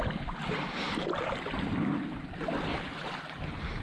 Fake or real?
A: real